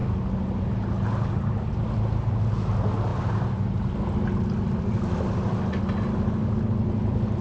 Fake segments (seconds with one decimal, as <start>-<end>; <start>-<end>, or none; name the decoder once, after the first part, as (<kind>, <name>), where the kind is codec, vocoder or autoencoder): none